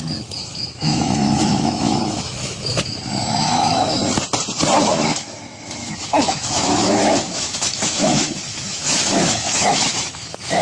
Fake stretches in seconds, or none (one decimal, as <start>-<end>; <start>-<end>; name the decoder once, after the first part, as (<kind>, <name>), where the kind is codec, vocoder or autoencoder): 0.0-4.0 (autoencoder, DAC-VAE); 4.8-10.6